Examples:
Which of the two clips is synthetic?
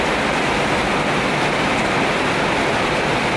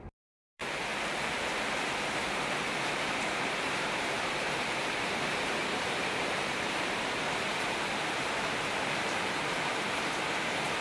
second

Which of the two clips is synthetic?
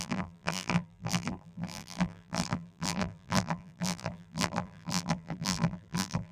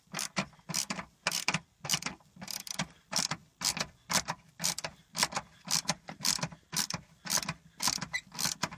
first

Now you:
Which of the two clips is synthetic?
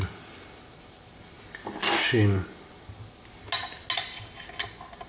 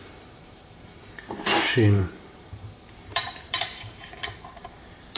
second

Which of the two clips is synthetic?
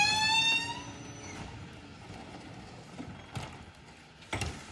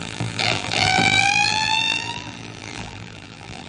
second